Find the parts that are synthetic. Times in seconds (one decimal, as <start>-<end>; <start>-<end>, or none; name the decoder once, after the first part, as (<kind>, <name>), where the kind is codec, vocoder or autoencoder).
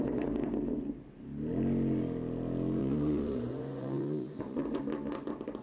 2.8-4.8 (vocoder, Vocos)